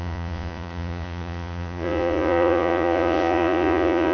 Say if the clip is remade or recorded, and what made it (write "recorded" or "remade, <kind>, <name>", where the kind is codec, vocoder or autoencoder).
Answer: remade, vocoder, Vocos